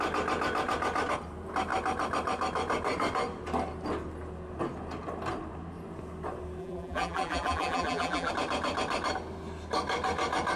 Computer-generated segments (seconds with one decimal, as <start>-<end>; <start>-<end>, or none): 6.6-8.3